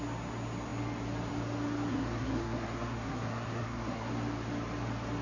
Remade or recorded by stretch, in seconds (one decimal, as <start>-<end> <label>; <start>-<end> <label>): 0.0-1.9 recorded; 1.9-4.1 remade; 4.1-5.2 recorded

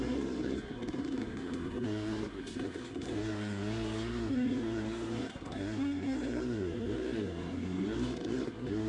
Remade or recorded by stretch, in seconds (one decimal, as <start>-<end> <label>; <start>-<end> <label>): 0.0-8.9 remade